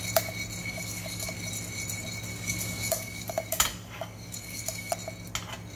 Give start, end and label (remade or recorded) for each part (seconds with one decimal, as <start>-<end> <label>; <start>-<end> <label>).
0.0-0.6 recorded; 0.6-1.3 remade; 1.3-2.3 recorded; 2.3-4.9 remade; 4.9-5.8 recorded